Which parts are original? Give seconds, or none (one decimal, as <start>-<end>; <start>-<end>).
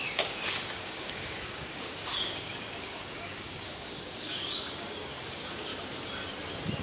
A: 5.7-6.8